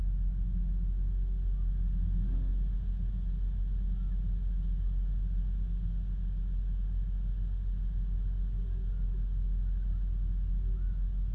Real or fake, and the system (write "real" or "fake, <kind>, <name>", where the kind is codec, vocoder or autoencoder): real